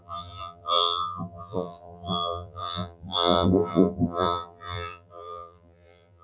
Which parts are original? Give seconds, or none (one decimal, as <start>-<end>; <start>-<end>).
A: none